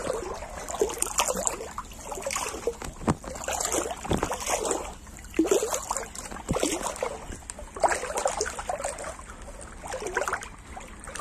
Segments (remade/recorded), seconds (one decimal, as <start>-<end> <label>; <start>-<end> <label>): 0.0-11.2 recorded